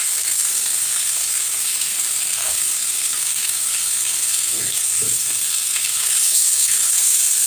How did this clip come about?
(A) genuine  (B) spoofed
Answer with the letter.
B